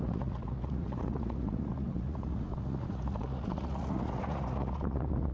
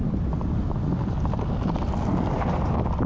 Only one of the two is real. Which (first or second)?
second